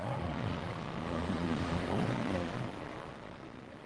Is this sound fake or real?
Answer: fake